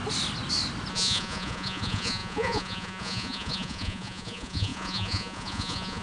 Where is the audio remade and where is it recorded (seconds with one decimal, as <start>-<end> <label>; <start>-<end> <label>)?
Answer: 0.0-0.9 recorded; 0.9-6.0 remade